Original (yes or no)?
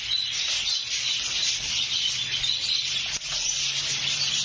yes